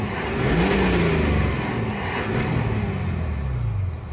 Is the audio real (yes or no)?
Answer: yes